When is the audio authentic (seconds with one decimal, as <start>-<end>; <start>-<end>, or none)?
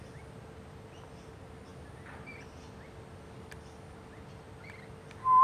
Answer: 0.0-5.4